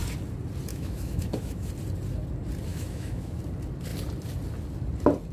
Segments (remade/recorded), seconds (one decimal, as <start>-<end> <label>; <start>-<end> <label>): 0.0-0.7 recorded; 0.7-1.7 remade; 1.7-2.7 recorded; 2.7-3.4 remade; 3.4-5.3 recorded